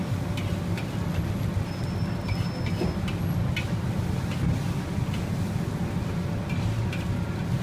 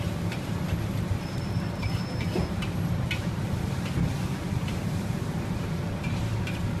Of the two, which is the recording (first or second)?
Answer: first